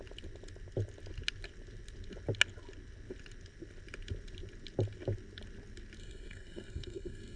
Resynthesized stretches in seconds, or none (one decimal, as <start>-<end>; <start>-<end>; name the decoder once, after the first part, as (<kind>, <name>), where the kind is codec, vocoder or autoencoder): 6.0-7.4 (codec, SNAC)